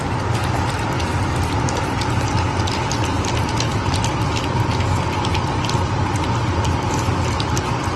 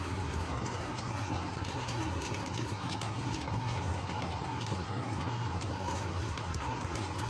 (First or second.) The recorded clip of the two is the first